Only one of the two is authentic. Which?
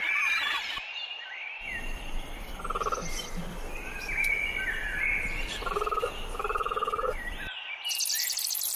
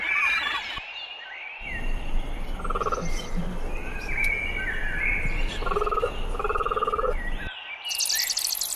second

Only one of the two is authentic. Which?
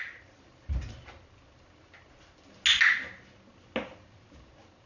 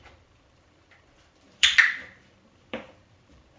first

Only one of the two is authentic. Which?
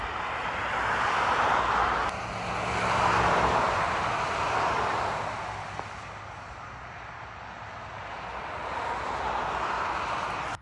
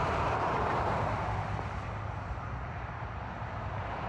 first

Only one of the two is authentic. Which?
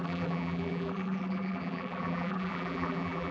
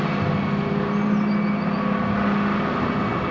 second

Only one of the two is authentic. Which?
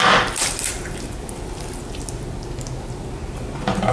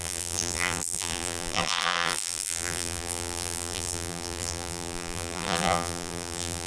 first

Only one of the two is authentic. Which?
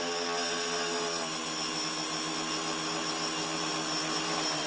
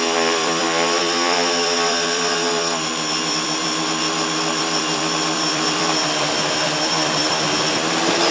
first